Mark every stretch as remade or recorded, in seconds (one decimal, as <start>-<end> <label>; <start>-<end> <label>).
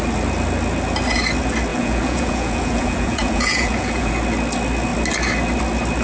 0.0-1.7 recorded; 1.7-4.1 remade; 4.1-6.0 recorded